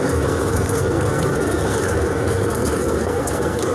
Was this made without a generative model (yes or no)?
no